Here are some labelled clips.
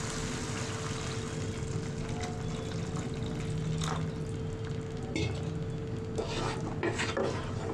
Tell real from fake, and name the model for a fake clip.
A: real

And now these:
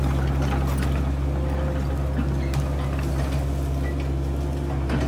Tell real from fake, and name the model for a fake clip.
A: real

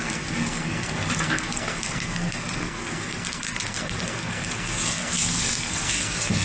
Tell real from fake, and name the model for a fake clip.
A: fake, codec, SNAC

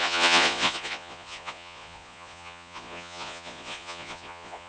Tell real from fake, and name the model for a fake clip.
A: fake, vocoder, Vocos